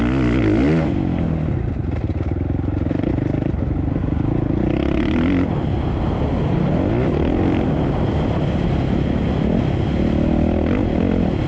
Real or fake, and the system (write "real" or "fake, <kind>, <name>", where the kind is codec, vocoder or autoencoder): real